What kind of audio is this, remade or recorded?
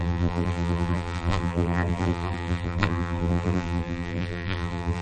remade